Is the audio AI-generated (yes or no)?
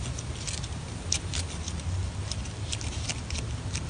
no